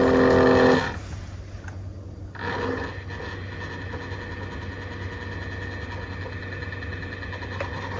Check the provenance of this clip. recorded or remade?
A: recorded